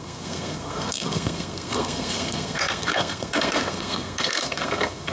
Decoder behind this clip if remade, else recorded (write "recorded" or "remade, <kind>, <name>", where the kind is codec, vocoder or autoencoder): remade, codec, SNAC